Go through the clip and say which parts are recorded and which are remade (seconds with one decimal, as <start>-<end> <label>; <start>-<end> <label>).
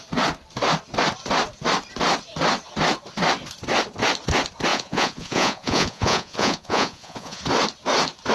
0.0-4.7 recorded; 4.7-7.4 remade; 7.4-8.3 recorded